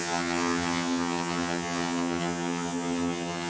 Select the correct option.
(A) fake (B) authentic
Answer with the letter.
A